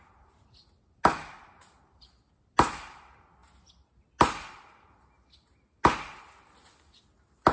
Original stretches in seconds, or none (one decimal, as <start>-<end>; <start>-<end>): 0.0-7.5